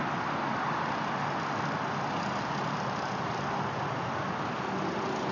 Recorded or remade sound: recorded